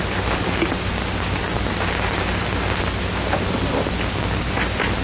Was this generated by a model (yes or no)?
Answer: no